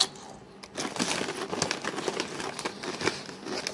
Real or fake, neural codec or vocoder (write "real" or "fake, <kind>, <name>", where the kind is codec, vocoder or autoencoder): real